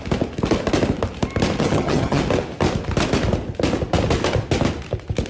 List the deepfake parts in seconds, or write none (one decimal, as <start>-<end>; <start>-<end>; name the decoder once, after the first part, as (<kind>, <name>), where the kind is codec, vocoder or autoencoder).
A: 1.6-2.2 (vocoder, HiFi-GAN)